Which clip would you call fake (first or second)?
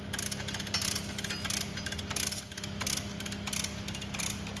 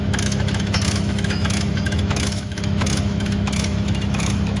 second